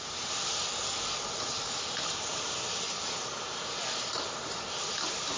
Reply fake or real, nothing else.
real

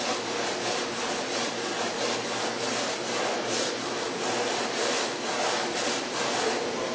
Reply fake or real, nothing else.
fake